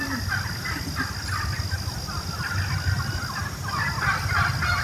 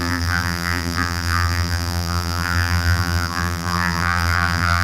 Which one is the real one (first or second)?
first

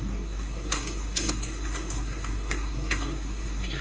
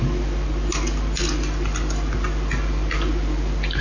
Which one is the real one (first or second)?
second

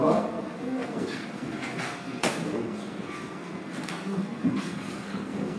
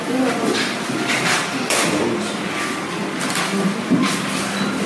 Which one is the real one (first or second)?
second